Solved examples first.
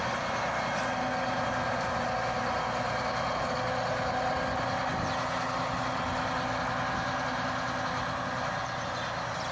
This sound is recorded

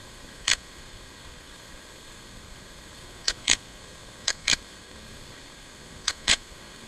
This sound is remade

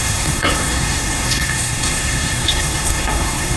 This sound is remade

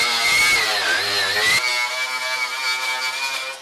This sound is recorded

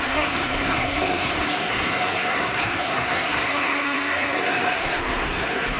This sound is remade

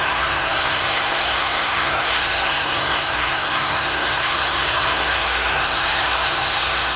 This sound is remade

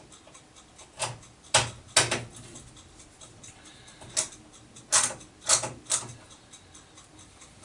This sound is recorded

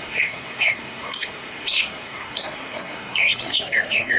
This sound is remade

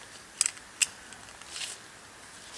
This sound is recorded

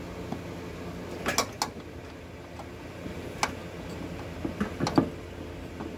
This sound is recorded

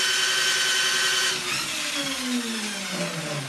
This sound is recorded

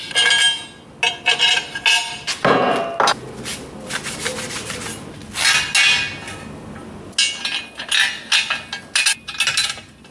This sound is recorded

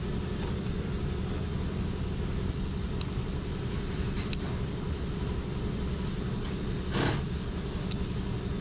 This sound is recorded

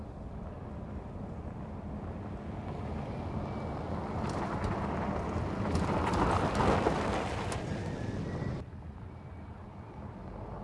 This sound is recorded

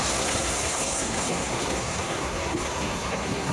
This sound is remade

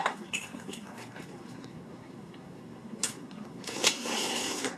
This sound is remade